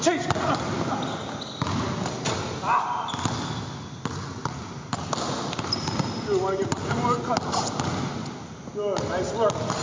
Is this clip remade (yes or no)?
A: no